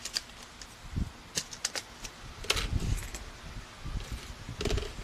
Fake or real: real